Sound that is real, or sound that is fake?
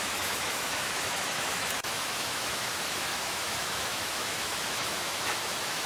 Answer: fake